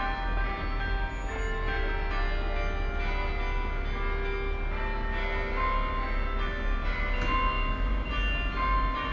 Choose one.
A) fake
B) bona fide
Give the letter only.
B